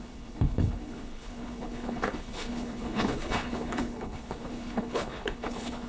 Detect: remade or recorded remade